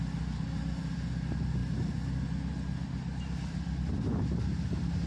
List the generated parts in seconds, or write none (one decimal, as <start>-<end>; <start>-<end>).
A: none